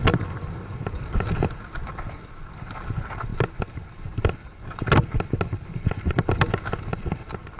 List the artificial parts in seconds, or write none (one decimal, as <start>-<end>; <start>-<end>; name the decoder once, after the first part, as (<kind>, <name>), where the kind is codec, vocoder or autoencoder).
none